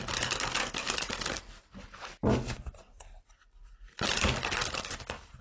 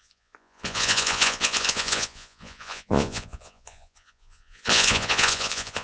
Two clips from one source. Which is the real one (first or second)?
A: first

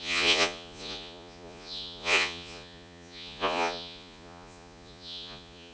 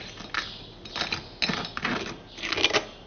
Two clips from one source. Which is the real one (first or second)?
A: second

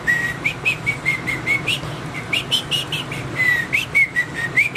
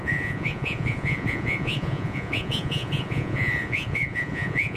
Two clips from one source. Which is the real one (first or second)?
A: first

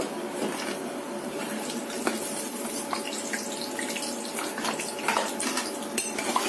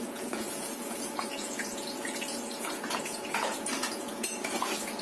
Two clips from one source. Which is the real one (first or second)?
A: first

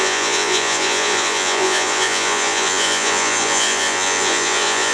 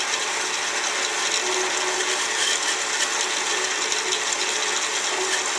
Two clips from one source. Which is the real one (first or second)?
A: second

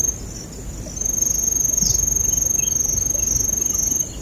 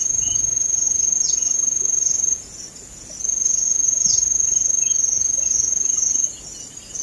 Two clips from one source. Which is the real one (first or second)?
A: first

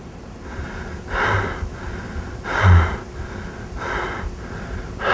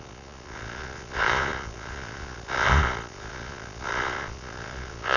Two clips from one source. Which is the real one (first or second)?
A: first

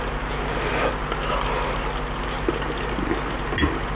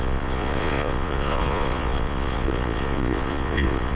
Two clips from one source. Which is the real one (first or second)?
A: first